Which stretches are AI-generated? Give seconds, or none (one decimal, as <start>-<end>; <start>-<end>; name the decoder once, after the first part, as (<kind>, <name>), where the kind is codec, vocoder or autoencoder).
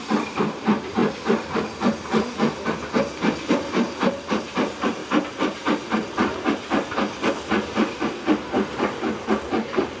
0.0-1.0 (vocoder, BigVGAN v2); 3.5-5.0; 9.5-10.0